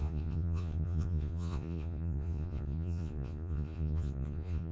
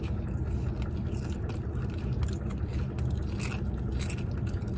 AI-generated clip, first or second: first